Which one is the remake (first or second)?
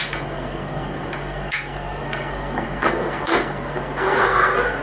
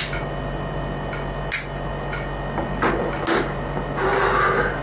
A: first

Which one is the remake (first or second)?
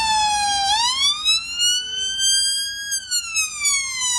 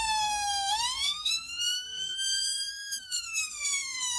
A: second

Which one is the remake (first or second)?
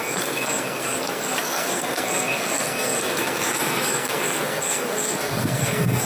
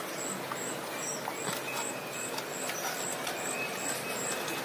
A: first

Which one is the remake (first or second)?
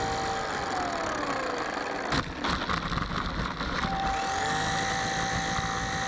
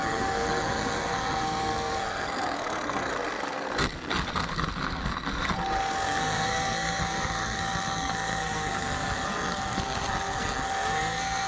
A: second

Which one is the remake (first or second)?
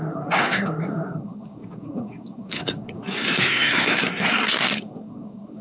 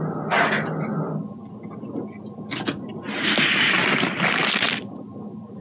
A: first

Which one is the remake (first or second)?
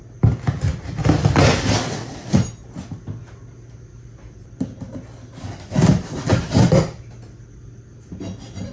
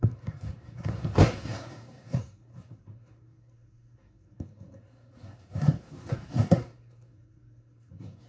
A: second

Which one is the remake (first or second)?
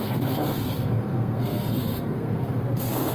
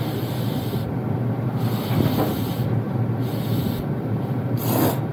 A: first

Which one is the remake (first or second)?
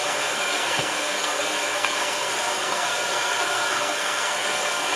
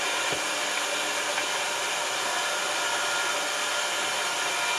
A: first